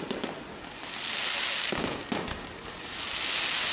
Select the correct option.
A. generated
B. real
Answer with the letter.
B